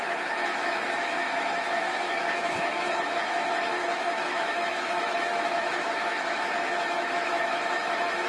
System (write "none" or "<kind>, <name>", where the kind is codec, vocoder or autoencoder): autoencoder, DAC-VAE